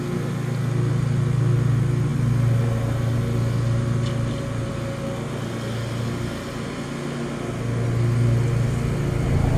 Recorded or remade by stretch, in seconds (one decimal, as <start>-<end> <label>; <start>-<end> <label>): 0.0-9.6 recorded